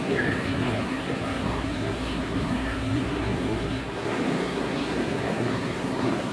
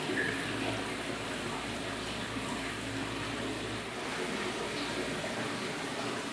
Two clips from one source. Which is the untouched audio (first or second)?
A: second